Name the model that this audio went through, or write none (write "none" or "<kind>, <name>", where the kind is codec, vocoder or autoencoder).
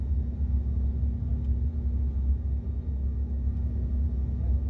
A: none